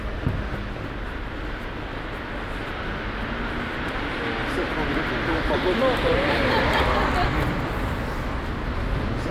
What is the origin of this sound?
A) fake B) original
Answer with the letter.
B